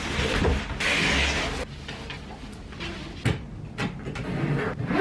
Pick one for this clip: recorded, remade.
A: recorded